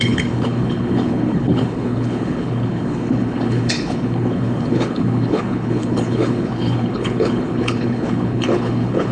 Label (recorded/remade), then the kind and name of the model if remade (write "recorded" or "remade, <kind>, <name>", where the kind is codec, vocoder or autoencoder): remade, codec, HILCodec